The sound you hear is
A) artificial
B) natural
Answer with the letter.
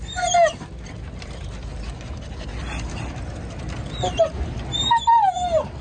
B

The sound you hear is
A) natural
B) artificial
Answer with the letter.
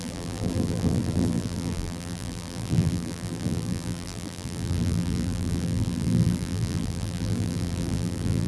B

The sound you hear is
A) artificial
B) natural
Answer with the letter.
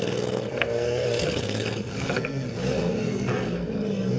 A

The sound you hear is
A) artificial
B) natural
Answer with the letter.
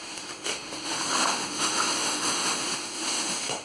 A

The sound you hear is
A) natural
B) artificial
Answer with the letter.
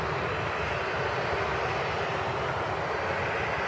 A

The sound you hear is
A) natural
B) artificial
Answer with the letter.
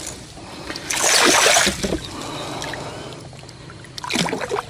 A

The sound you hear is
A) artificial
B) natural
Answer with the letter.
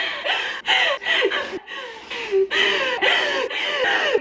B